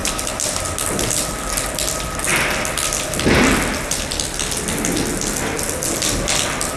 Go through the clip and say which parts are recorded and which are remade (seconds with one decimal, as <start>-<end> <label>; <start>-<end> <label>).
0.0-6.8 recorded